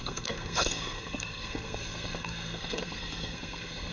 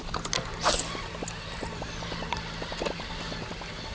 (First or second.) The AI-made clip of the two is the first